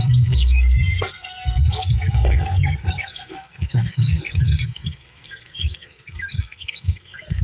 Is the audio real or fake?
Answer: fake